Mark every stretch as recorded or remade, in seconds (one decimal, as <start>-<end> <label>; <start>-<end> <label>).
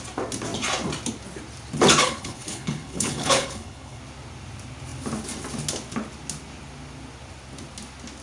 0.0-2.0 recorded; 2.0-4.0 remade; 4.0-8.2 recorded